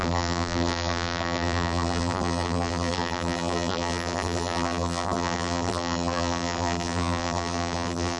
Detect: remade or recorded remade